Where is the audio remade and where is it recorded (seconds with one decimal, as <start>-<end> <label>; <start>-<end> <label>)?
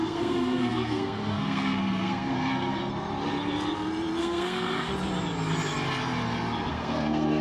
0.0-2.9 remade; 2.9-4.2 recorded; 4.2-4.9 remade; 4.9-6.7 recorded; 6.7-7.4 remade